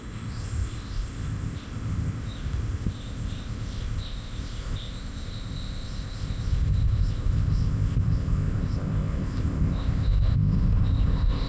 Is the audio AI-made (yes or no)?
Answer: yes